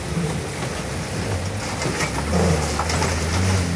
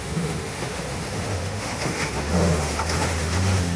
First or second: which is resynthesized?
second